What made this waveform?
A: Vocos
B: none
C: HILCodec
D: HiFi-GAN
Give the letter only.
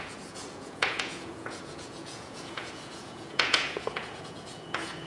A